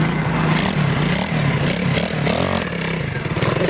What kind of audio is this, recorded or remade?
recorded